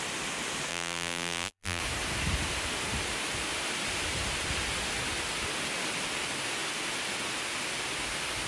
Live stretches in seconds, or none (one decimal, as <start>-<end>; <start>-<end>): 0.0-0.7; 1.8-8.5